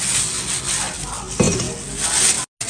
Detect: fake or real real